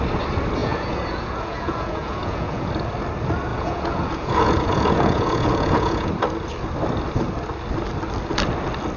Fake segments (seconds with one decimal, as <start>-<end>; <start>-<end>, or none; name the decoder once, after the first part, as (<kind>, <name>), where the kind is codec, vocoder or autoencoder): 0.6-2.7 (vocoder, Vocos); 3.5-6.1